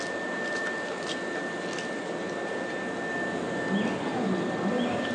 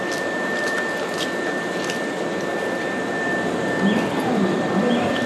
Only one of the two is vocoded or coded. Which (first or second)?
second